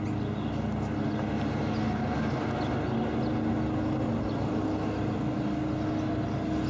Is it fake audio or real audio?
real